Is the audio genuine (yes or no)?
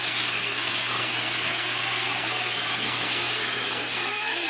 no